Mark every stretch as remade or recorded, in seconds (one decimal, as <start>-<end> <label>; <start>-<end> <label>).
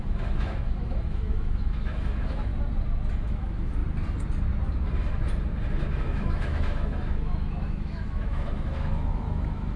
0.0-2.5 remade; 2.5-3.1 recorded; 3.1-3.8 remade; 3.8-5.8 recorded; 5.8-9.8 remade